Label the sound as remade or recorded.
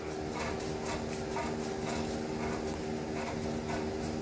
recorded